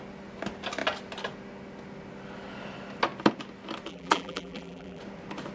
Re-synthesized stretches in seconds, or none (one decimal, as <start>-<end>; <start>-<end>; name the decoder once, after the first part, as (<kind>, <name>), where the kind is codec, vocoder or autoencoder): 3.9-5.0 (vocoder, BigVGAN v2)

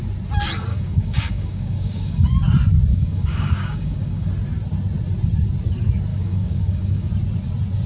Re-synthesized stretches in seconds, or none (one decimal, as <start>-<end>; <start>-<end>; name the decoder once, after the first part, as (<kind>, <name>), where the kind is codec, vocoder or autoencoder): 0.7-2.3 (codec, DAC); 2.9-4.3; 6.1-7.1

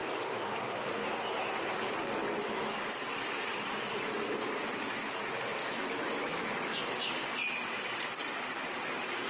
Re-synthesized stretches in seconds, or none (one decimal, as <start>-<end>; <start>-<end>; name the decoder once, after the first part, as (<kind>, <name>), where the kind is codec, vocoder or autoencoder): 2.2-2.8 (autoencoder, DAC-VAE); 5.6-6.8

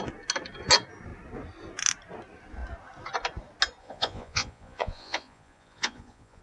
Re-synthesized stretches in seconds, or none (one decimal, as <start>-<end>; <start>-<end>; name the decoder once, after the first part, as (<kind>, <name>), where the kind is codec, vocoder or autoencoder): 3.8-6.4 (vocoder, Vocos)

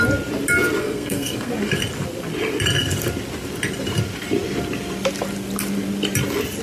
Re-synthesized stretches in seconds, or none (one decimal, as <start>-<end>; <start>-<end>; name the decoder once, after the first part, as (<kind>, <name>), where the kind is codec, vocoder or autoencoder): 0.8-1.5 (codec, SNAC)

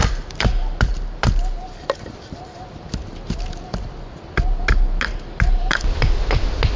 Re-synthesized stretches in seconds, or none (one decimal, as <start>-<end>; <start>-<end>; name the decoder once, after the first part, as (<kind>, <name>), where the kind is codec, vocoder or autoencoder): none

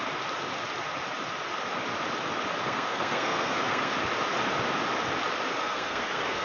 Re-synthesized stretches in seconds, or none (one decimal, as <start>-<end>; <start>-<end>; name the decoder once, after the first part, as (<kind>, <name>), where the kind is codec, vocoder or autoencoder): 2.6-3.9 (codec, SNAC); 5.6-6.4

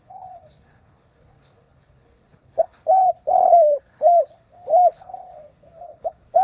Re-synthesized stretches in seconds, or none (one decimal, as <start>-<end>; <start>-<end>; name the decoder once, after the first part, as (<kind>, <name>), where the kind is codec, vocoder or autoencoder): 0.0-6.4 (codec, HILCodec)